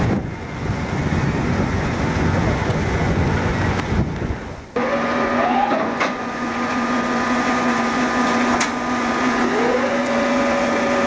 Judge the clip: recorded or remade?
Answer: remade